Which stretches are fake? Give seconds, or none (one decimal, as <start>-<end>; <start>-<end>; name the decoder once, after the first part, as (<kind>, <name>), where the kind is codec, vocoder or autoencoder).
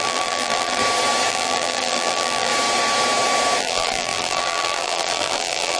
0.0-0.8 (vocoder, BigVGAN v2); 1.3-2.5; 3.6-5.8